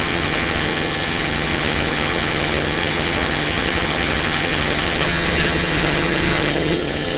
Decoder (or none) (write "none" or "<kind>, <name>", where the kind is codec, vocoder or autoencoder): vocoder, HiFi-GAN